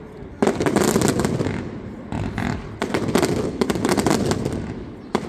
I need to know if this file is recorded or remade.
recorded